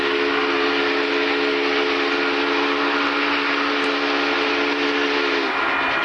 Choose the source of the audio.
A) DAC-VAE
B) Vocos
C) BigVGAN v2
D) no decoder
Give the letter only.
D